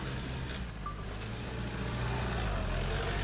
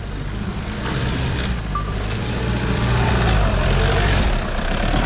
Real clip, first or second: first